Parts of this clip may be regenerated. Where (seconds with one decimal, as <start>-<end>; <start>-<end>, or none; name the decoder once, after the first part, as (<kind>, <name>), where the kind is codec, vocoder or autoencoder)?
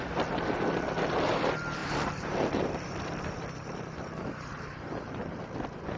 1.8-5.4 (vocoder, BigVGAN v2)